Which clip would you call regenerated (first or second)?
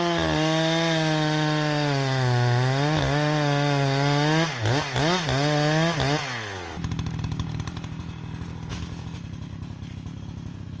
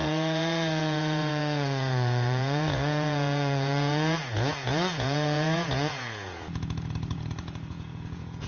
second